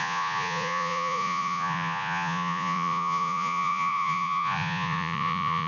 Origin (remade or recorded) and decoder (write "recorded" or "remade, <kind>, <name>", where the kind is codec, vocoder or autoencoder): remade, vocoder, Vocos